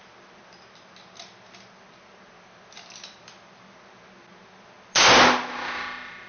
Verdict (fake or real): real